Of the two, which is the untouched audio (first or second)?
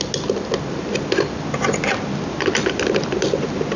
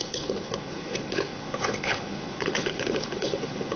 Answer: first